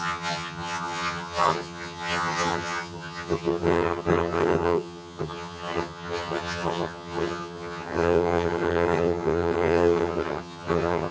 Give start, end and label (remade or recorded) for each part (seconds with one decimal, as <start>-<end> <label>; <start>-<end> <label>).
0.0-11.1 remade